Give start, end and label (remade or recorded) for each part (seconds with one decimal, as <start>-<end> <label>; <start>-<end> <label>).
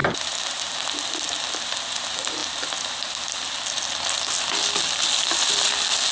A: 0.0-6.1 recorded